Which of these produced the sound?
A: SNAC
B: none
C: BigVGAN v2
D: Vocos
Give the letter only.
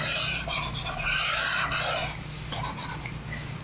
B